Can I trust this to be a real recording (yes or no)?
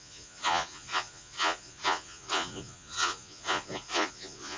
no